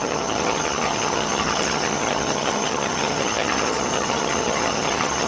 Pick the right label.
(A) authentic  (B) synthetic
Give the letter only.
B